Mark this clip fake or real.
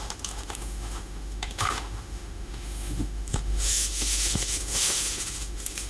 fake